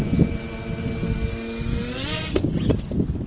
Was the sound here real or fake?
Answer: real